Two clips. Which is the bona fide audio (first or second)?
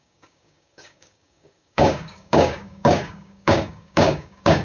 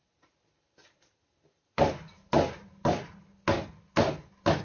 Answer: second